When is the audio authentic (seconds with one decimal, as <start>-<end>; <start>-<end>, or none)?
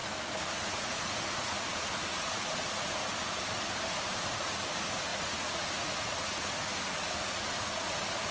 0.0-0.7; 3.0-3.9